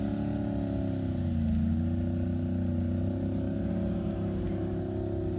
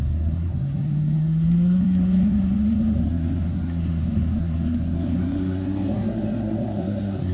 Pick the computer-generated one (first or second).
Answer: second